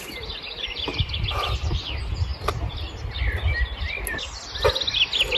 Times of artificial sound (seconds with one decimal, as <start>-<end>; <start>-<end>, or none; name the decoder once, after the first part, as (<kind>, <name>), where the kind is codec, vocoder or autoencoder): none

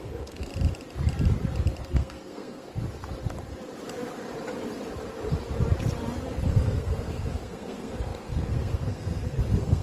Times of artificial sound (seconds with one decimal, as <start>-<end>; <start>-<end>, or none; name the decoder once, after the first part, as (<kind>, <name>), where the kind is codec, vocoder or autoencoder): 0.0-0.5 (codec, SNAC); 1.8-2.7; 6.4-9.8

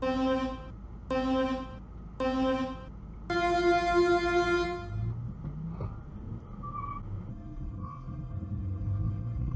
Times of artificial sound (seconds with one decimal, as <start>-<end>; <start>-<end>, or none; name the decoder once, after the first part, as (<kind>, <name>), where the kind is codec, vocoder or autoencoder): 7.3-9.6 (codec, SNAC)

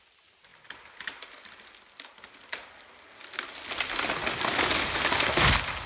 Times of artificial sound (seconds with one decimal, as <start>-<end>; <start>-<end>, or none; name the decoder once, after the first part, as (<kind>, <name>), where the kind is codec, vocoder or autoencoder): none

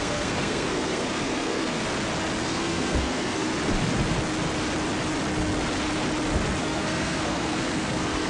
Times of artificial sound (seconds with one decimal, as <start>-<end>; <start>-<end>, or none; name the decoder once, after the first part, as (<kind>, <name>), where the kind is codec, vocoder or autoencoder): 0.0-1.8 (codec, SNAC); 2.4-3.5; 6.6-8.3